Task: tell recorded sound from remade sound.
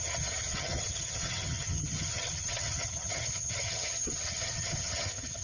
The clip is remade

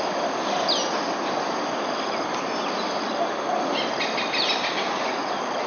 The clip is recorded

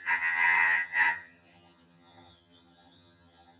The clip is remade